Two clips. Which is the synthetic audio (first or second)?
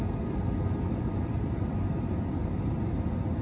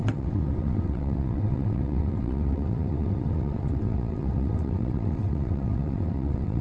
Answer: second